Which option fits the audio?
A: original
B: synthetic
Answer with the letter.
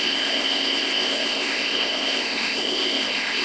B